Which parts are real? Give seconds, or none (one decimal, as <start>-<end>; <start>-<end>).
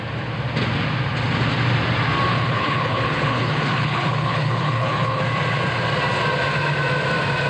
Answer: 0.0-2.3; 5.2-7.5